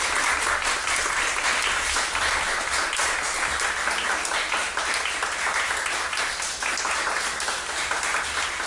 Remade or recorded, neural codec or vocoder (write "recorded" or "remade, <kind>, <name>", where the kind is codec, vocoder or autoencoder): recorded